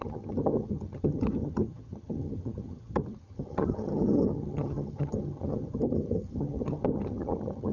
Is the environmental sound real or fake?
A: fake